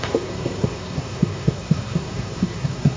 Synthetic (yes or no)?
yes